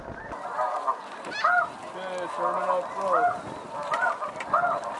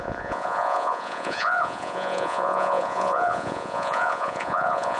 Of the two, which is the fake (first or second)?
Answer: second